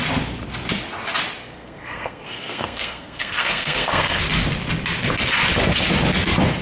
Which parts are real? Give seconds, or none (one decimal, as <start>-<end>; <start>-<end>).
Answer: 0.0-1.4; 4.2-6.6